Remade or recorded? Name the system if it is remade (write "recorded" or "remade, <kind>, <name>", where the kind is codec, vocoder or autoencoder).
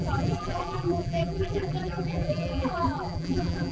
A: remade, vocoder, BigVGAN v2